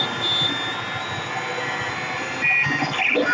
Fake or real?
real